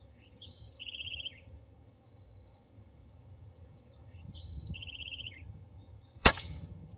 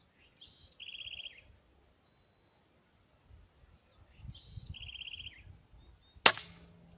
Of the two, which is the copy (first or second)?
first